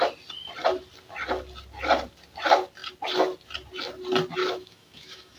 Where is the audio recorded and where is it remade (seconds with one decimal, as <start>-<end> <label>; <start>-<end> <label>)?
0.0-4.4 recorded; 4.4-5.4 remade